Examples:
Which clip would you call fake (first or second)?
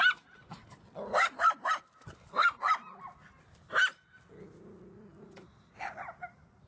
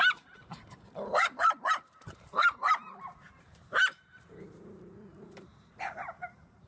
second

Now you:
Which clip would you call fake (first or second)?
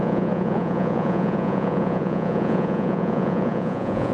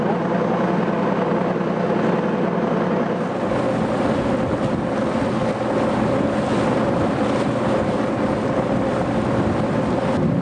first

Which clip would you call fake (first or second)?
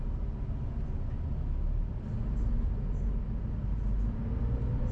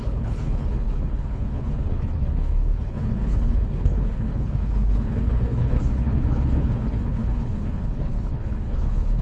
second